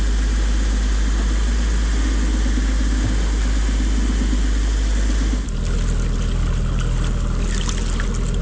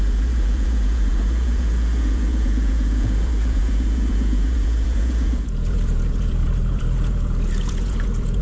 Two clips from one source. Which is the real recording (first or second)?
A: first